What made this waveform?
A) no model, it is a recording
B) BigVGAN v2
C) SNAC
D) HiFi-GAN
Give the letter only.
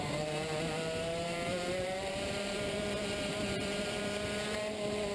B